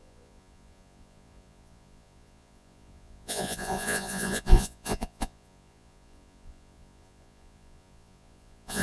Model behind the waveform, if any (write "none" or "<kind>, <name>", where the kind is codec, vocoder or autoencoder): vocoder, Vocos